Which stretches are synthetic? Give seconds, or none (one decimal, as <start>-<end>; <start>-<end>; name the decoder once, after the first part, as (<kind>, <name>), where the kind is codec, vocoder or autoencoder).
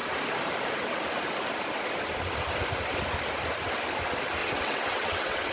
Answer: 4.4-5.5 (vocoder, WaveNeXt)